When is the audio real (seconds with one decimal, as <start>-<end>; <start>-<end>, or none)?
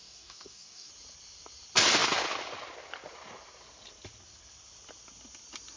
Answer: 0.9-5.8